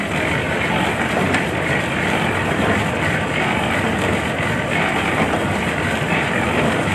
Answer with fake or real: real